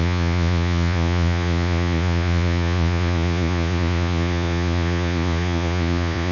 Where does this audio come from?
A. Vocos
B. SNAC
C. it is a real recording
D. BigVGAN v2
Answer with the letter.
A